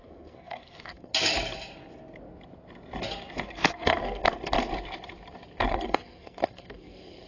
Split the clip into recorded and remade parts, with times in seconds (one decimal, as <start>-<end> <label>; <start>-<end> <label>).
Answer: 0.0-1.1 remade; 1.1-3.4 recorded; 3.4-4.2 remade; 4.2-5.7 recorded; 5.7-7.3 remade

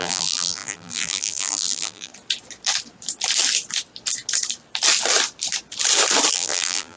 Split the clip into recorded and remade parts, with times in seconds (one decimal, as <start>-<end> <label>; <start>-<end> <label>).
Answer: 0.0-2.1 remade; 2.1-6.3 recorded; 6.3-7.0 remade

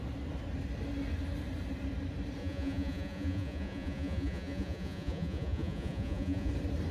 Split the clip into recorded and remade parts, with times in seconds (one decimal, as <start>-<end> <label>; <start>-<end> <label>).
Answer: 0.0-2.4 recorded; 2.4-6.5 remade; 6.5-6.9 recorded

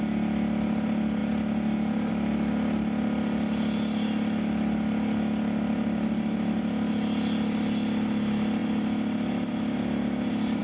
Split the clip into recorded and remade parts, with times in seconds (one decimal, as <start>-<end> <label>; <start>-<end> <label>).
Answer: 0.0-10.6 recorded